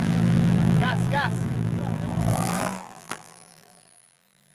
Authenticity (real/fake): fake